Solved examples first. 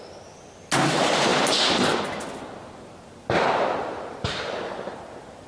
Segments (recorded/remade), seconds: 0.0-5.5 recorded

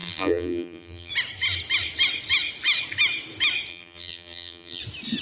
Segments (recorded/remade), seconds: 0.0-1.1 remade; 1.1-3.7 recorded; 3.7-4.8 remade; 4.8-5.2 recorded

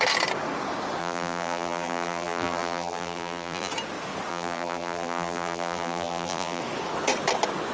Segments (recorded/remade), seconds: 0.0-1.0 recorded; 1.0-3.7 remade; 3.7-4.3 recorded; 4.3-6.6 remade; 6.6-7.7 recorded

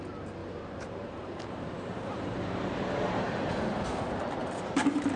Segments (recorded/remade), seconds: 0.0-0.4 recorded; 0.4-3.5 remade; 3.5-4.4 recorded; 4.4-5.2 remade